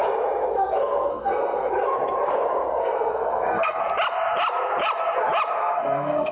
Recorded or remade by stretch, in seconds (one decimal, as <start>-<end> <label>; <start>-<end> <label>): 0.0-1.1 recorded; 1.1-1.7 remade; 1.7-2.8 recorded; 2.8-3.8 remade; 3.8-5.6 recorded; 5.6-6.3 remade